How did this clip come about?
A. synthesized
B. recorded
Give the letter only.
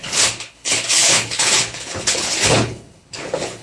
A